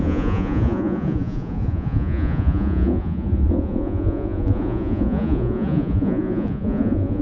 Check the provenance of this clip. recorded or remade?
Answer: remade